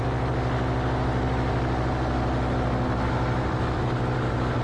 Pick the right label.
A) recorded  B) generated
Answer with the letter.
A